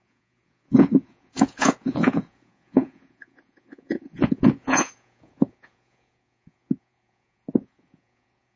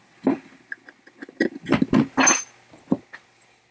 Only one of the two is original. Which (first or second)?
second